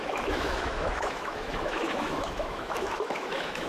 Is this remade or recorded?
remade